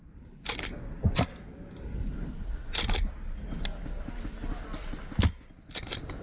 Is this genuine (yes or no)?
yes